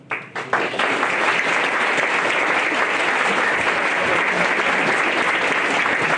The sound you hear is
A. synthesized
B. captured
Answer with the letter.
B